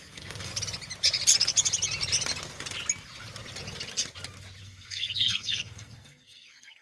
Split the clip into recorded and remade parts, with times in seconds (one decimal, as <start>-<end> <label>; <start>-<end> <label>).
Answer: 0.0-0.5 remade; 0.5-4.6 recorded; 4.6-6.8 remade